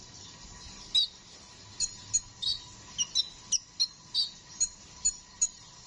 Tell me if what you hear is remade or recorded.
recorded